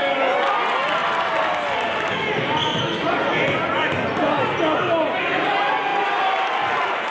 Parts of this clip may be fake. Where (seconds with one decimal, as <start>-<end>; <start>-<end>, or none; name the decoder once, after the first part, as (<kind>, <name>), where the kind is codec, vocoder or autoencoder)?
none